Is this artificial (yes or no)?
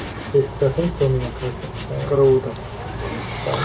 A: no